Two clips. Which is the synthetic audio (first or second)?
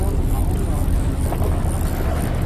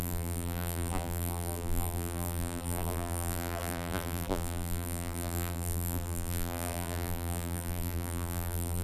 second